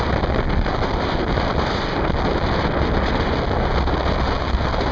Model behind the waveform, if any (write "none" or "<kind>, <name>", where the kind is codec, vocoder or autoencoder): none